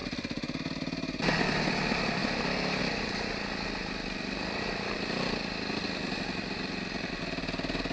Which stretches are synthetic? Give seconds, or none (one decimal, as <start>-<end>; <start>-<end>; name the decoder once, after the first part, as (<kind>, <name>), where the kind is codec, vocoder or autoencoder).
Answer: none